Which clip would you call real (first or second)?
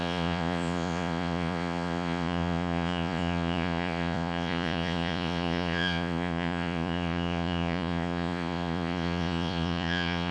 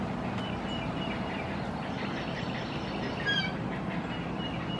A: second